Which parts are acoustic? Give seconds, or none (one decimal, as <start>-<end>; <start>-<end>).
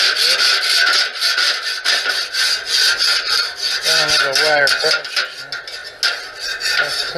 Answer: 0.0-7.2